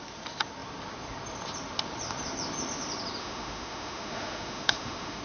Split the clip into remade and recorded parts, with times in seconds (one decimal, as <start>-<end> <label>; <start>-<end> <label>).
0.0-3.2 recorded; 3.2-5.2 remade